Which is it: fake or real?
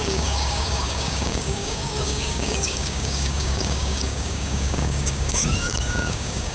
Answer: fake